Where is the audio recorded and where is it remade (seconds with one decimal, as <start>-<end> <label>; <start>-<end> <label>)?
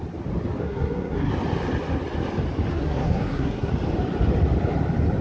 0.0-0.6 recorded; 0.6-1.3 remade; 1.3-2.7 recorded; 2.7-3.7 remade; 3.7-5.2 recorded